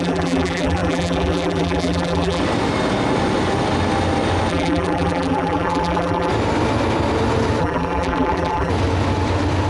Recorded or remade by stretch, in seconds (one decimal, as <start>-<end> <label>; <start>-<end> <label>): 0.0-2.4 remade; 2.4-4.5 recorded; 4.5-6.3 remade; 6.3-7.6 recorded; 7.6-8.7 remade; 8.7-9.7 recorded